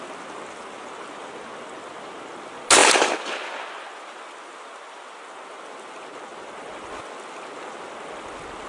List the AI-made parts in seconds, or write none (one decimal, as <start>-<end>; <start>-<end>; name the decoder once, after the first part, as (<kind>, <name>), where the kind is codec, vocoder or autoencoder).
none